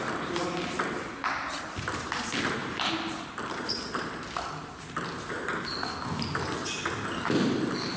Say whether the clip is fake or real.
real